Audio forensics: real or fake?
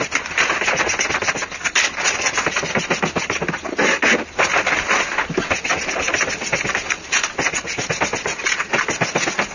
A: real